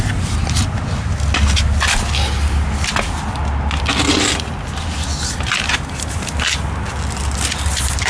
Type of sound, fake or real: real